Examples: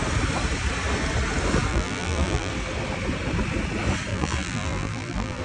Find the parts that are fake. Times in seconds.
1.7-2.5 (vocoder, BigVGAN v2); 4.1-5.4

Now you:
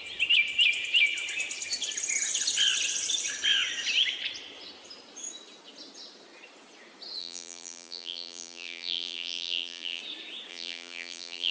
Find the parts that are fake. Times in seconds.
7.2-10.0 (vocoder, BigVGAN v2); 10.5-11.5

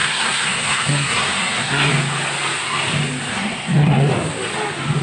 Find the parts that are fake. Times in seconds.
0.0-1.9 (codec, SNAC); 3.3-4.1

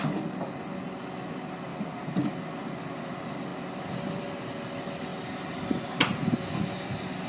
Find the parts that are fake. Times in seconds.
none

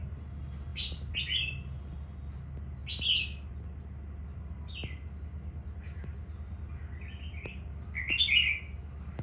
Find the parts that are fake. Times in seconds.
none

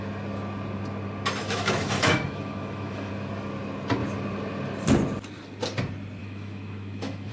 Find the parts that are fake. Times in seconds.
1.4-3.1 (autoencoder, DAC-VAE); 6.2-7.3